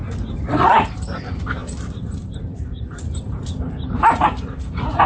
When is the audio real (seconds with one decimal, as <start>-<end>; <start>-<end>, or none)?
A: 0.9-1.6